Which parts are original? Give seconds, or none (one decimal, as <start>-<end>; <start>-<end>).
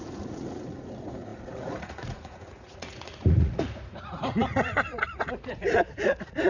none